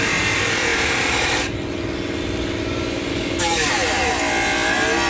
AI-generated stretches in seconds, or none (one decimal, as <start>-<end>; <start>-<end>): 3.1-3.7